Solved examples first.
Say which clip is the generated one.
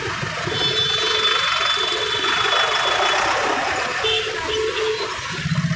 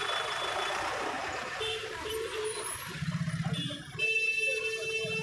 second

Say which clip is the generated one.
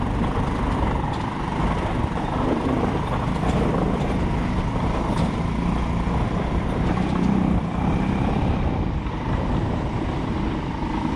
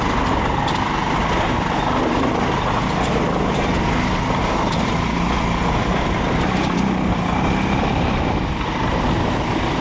first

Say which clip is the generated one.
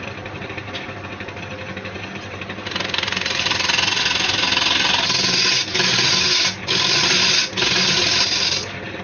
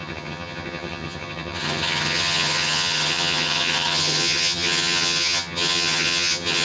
second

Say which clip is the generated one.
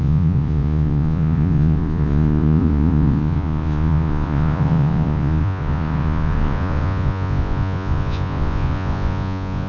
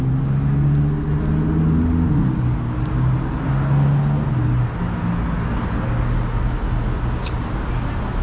first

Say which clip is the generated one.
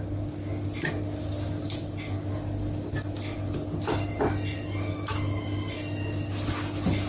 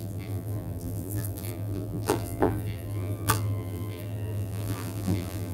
second